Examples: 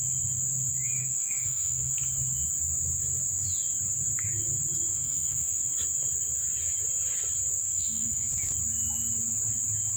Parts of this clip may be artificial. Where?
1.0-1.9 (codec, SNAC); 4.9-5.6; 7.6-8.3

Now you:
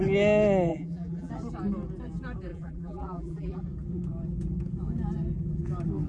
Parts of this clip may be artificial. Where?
0.7-1.3 (vocoder, BigVGAN v2); 2.5-3.6

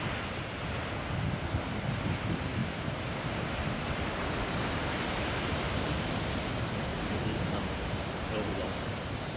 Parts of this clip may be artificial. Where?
2.6-6.2 (vocoder, BigVGAN v2); 6.9-9.4

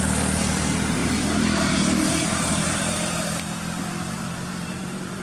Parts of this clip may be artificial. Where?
0.0-5.2 (vocoder, BigVGAN v2)

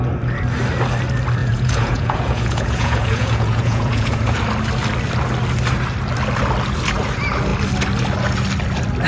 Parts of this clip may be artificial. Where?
1.4-4.4 (vocoder, Vocos)

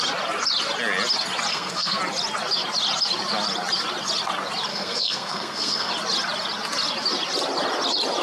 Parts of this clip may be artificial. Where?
1.5-2.0 (codec, SNAC); 4.7-5.9

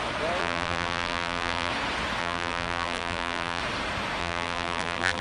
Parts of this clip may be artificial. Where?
0.4-1.7 (vocoder, BigVGAN v2); 2.2-3.6; 4.2-5.2